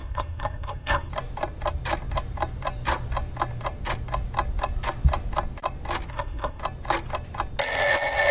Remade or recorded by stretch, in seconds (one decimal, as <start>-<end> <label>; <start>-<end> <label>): 0.0-1.1 remade; 1.1-6.1 recorded; 6.1-6.6 remade; 6.6-8.3 recorded